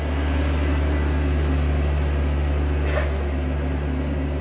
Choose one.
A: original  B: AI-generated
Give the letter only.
A